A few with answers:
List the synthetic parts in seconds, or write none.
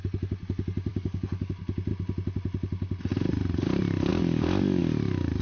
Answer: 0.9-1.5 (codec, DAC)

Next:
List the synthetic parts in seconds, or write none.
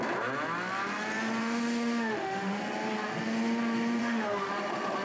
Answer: 1.4-2.6 (autoencoder, DAC-VAE); 4.0-4.5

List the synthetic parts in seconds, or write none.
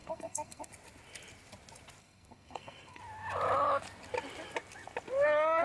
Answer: 0.0-0.7 (codec, SNAC); 2.0-3.0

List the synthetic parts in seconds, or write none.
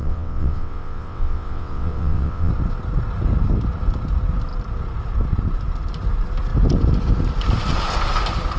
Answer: 0.0-2.5 (vocoder, WaveNeXt)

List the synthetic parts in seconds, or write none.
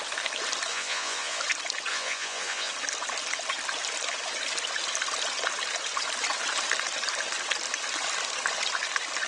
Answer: 0.7-1.4 (vocoder, Vocos); 1.9-2.7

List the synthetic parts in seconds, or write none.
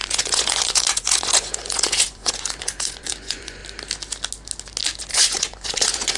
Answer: 0.0-3.6 (vocoder, Vocos); 5.0-6.2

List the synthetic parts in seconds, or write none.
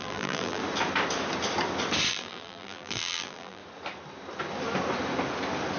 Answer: 0.0-0.6 (vocoder, BigVGAN v2); 2.1-3.6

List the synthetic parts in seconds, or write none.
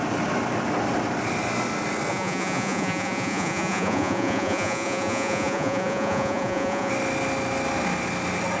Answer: 2.1-6.9 (vocoder, Vocos)